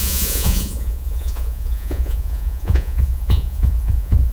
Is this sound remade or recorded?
remade